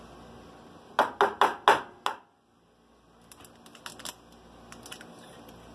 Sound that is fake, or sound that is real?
real